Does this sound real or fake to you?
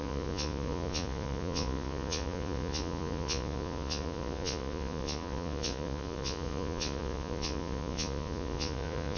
fake